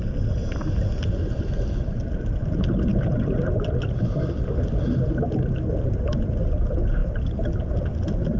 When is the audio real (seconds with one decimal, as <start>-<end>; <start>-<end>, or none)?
0.0-8.4